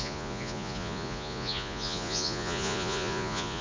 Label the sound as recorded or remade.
remade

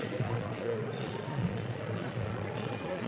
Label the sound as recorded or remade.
remade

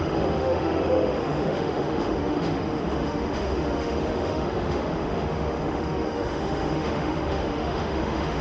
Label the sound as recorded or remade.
remade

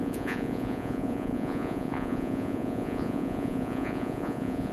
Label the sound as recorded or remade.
remade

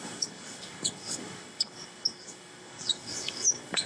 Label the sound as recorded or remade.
remade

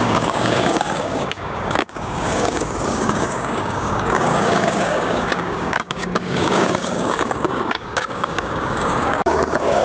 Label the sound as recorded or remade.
remade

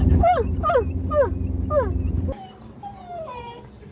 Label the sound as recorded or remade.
recorded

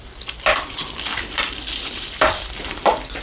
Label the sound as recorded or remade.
remade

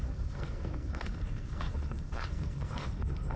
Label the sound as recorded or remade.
remade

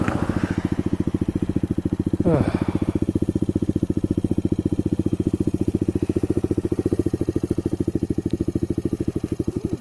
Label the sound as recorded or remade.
recorded